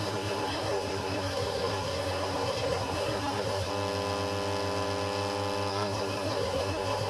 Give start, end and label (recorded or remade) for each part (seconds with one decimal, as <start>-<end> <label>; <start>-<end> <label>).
0.0-3.7 remade; 3.7-5.7 recorded; 5.7-7.1 remade